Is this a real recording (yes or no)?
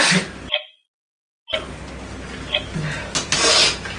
yes